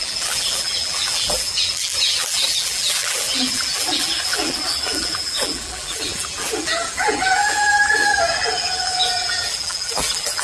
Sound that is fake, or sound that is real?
fake